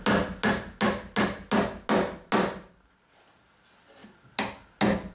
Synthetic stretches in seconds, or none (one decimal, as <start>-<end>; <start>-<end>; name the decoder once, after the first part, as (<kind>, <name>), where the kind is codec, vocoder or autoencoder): none